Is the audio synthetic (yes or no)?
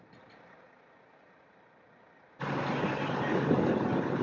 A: no